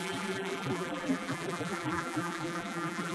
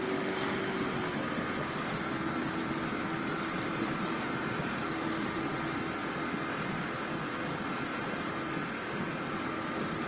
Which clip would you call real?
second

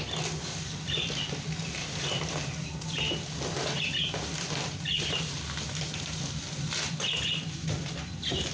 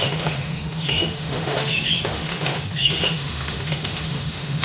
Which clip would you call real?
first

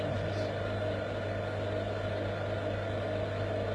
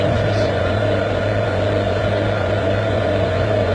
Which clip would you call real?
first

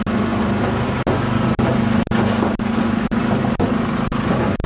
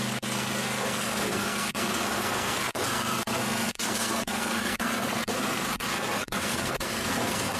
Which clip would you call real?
first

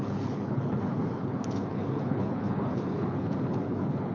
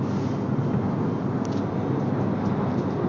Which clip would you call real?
second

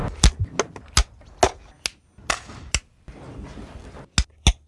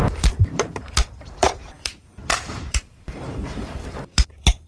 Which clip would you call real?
first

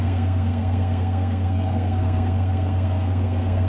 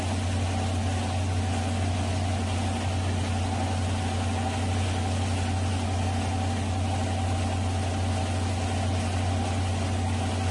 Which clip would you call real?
second